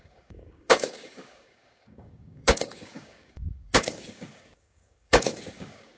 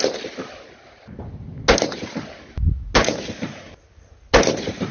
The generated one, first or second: first